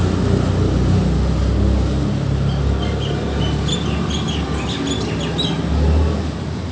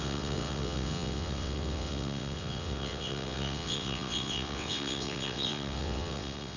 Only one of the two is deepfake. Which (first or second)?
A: second